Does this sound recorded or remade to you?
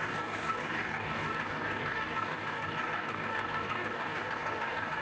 remade